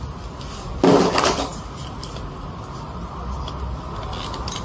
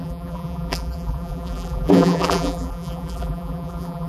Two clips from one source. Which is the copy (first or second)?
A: second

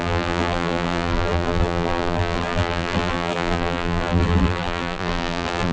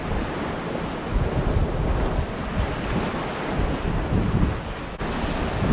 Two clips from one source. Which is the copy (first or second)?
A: first